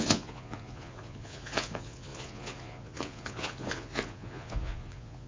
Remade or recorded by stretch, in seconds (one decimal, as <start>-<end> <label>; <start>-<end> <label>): 0.0-5.3 remade